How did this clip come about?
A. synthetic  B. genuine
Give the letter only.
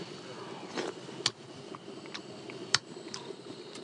B